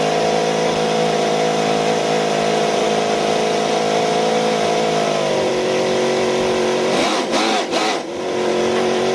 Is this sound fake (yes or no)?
no